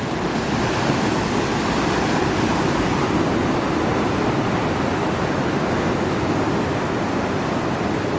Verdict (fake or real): real